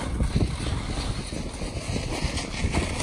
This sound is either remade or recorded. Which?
recorded